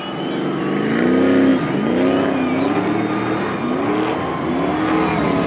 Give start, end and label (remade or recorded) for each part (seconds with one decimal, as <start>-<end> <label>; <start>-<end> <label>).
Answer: 0.0-5.5 recorded